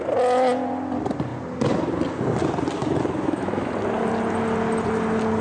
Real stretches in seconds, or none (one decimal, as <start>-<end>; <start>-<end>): 0.0-2.8; 3.7-5.4